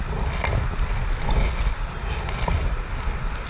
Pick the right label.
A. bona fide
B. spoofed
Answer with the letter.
A